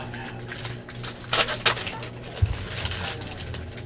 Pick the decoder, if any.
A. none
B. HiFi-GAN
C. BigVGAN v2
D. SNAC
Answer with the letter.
A